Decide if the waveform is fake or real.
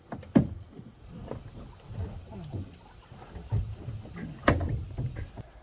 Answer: real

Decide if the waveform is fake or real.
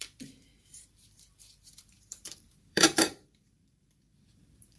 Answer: fake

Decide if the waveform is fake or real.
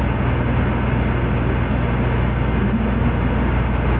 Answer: real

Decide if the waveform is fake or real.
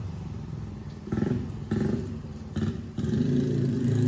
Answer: fake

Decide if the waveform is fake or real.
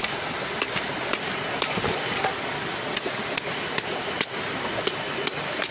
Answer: real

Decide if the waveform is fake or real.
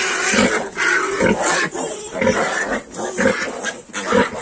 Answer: real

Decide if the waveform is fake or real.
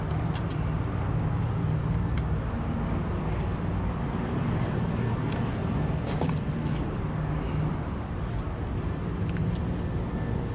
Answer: real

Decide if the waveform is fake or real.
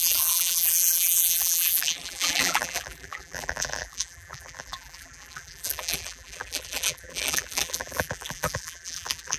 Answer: fake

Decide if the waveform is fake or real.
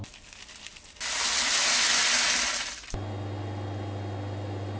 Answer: real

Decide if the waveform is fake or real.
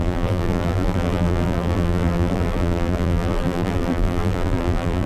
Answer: fake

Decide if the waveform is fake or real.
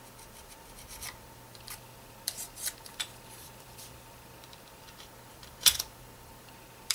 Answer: fake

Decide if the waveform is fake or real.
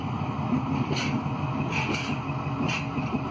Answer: real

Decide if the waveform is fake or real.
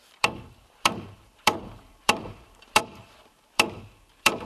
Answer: fake